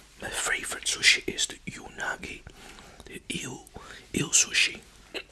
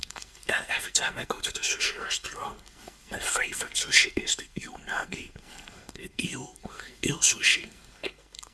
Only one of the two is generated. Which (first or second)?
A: second